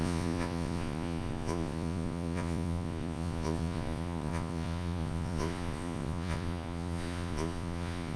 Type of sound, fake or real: fake